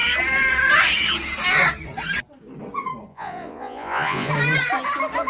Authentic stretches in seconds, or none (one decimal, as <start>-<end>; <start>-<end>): 0.0-3.1; 4.3-5.3

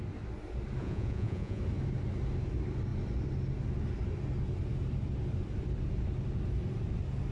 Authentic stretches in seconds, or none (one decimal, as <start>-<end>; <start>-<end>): 0.0-0.8; 1.6-7.3